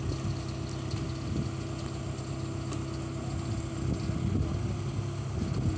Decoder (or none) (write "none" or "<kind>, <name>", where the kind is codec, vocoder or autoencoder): none